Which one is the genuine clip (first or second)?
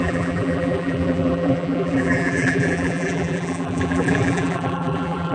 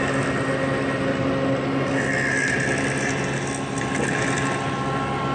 second